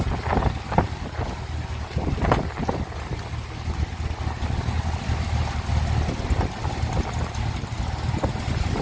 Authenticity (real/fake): real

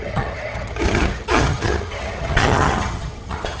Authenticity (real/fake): fake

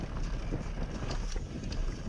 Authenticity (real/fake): real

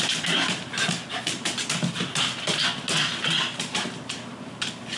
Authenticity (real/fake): real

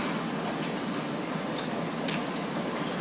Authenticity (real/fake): real